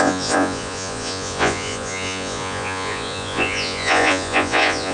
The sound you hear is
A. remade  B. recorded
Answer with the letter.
A